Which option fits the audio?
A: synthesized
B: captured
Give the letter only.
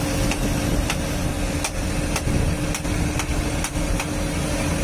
B